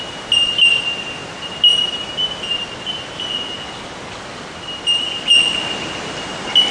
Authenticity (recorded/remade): recorded